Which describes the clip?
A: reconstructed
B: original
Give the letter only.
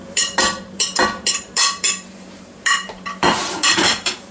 A